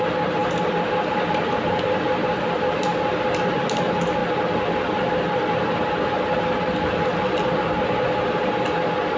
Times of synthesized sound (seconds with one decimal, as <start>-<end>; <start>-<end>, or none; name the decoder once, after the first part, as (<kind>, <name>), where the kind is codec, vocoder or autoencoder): none